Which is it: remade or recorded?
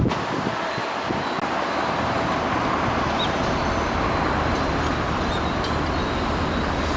recorded